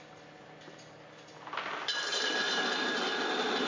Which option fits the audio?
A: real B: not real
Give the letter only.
A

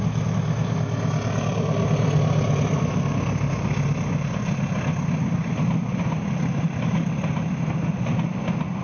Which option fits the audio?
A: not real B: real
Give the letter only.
B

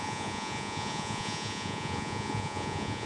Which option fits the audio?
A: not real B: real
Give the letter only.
A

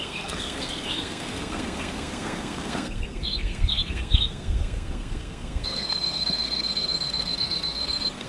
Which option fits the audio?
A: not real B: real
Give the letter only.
A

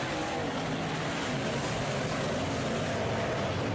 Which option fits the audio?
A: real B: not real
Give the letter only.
A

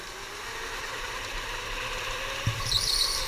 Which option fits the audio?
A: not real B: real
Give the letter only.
B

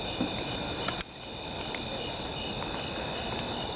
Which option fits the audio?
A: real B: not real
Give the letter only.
A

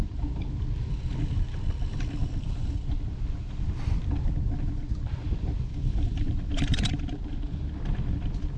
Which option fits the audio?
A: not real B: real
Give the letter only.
B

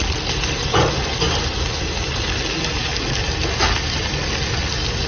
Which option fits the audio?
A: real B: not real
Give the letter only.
A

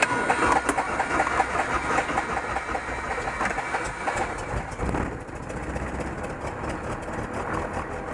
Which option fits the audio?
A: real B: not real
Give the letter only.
A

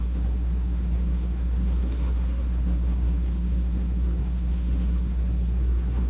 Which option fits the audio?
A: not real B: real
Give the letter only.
A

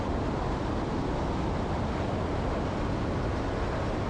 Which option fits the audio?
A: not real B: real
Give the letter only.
A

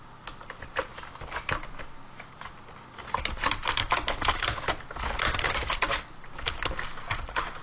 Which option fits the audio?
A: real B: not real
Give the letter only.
A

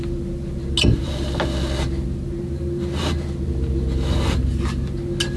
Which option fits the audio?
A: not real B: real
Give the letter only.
B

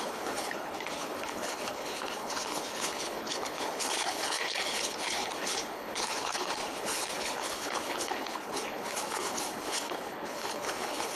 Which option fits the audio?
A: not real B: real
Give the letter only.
A